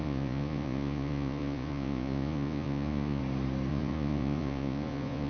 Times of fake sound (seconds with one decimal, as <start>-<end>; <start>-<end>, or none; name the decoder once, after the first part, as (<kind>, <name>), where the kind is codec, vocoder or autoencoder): 0.0-3.2 (vocoder, Vocos); 3.7-5.3